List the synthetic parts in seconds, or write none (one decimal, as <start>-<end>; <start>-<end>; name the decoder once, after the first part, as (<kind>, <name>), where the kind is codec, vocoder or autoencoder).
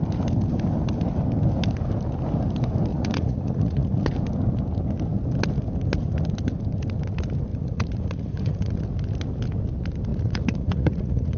2.9-4.0 (vocoder, Vocos); 7.5-8.7; 10.1-11.4